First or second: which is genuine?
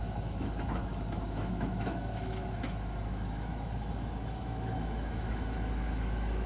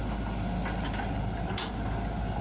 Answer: second